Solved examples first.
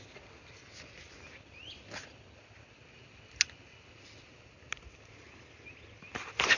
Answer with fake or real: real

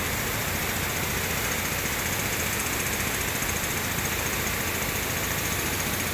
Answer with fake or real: real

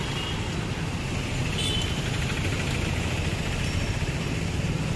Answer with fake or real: real